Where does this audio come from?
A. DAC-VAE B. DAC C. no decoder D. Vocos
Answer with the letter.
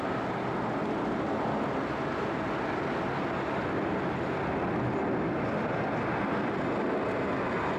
C